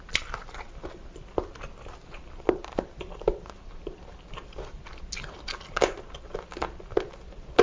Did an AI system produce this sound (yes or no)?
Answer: no